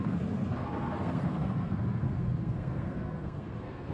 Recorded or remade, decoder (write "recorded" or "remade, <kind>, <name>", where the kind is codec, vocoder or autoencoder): remade, codec, SNAC